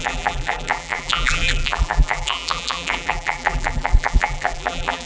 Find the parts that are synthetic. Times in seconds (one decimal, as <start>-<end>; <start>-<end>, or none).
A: 0.0-5.1